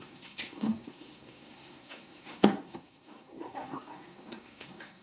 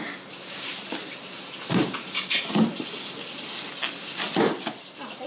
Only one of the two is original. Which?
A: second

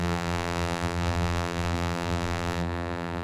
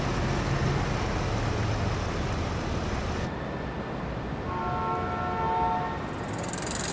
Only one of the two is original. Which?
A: second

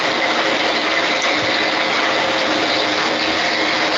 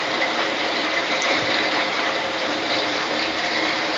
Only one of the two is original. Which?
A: first